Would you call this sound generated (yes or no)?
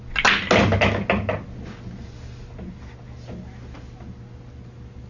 no